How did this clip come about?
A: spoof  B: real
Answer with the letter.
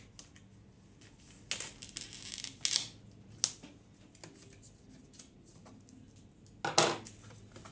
B